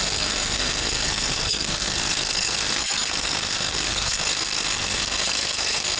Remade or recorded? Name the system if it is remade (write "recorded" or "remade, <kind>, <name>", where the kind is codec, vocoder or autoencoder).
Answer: remade, codec, SNAC